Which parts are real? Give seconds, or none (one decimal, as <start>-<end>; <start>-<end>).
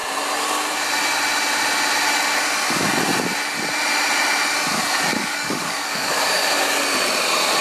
0.0-5.1; 6.8-7.6